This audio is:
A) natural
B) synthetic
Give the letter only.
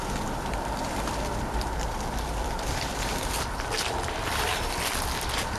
B